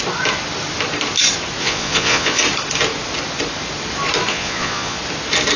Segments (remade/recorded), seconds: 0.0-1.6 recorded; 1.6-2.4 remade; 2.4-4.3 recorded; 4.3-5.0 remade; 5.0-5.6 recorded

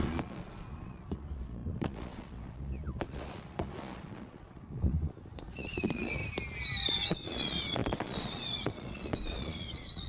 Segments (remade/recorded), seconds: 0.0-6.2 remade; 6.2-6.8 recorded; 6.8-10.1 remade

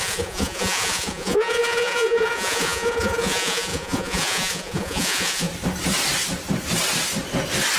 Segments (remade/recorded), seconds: 0.0-5.5 remade; 5.5-7.8 recorded

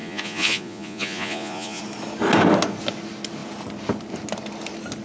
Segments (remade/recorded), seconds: 0.0-1.8 remade; 1.8-5.0 recorded

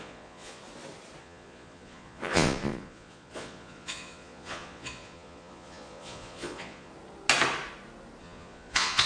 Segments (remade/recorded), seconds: 0.0-0.6 remade; 0.6-1.2 recorded; 1.2-6.9 remade; 6.9-8.2 recorded; 8.2-9.1 remade

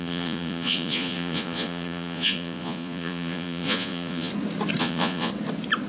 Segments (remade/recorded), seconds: 0.0-4.3 remade; 4.3-4.8 recorded; 4.8-5.3 remade; 5.3-5.9 recorded

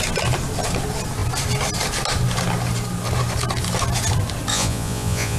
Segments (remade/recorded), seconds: 0.0-4.5 recorded; 4.5-5.4 remade